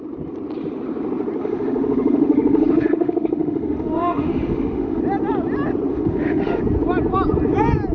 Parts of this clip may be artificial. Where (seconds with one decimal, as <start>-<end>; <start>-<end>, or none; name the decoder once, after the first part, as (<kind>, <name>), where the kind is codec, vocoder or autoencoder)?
1.4-5.0 (autoencoder, DAC-VAE); 5.9-6.6